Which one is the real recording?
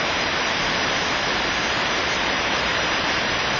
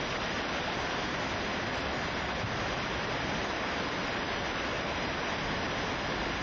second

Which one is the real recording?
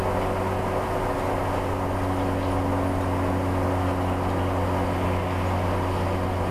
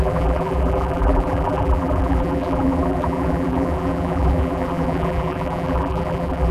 first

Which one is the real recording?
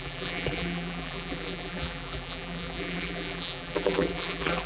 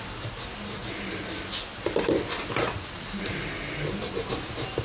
second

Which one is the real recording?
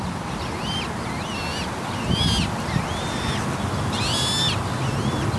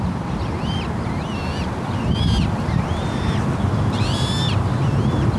first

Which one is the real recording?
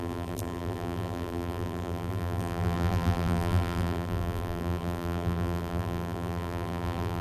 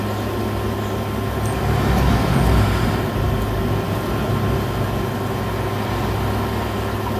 second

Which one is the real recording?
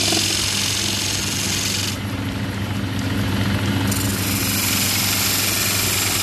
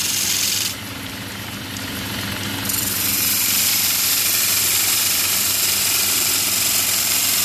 first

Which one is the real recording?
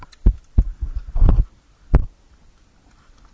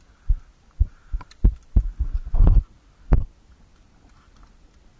second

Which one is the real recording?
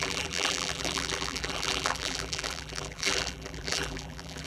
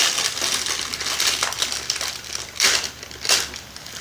second